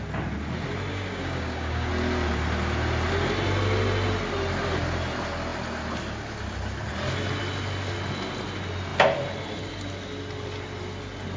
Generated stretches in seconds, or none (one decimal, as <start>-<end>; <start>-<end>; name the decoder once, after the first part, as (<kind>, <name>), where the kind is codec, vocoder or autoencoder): 0.9-1.9 (codec, DAC)